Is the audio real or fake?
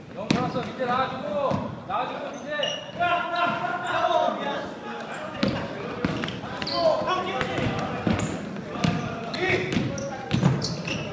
real